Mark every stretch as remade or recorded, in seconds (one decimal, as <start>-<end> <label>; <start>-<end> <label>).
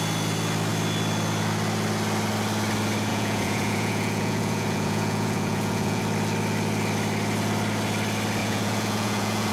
0.0-3.1 recorded; 3.1-6.0 remade; 6.0-8.4 recorded; 8.4-9.5 remade